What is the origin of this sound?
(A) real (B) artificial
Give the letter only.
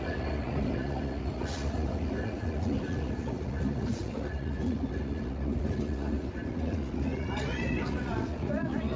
B